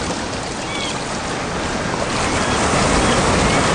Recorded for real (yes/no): yes